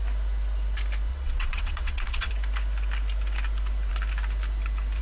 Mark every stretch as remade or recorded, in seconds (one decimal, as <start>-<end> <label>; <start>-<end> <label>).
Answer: 0.0-1.1 recorded; 1.1-2.3 remade; 2.3-5.0 recorded